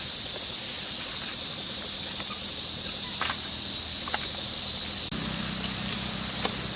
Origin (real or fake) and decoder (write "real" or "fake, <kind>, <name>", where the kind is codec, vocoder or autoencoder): real